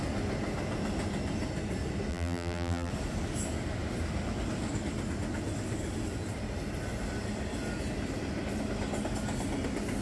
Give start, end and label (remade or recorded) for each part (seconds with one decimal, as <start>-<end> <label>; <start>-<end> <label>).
0.0-2.1 recorded; 2.1-2.9 remade; 2.9-10.0 recorded